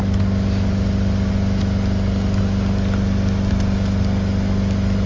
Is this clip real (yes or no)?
yes